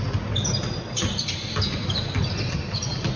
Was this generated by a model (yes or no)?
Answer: no